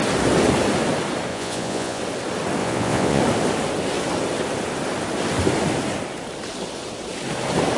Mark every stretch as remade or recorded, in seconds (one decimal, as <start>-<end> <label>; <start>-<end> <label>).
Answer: 0.0-1.3 recorded; 1.3-2.0 remade; 2.0-2.6 recorded; 2.6-3.2 remade; 3.2-7.8 recorded